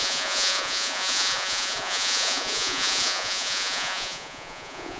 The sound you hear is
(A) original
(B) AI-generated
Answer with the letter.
B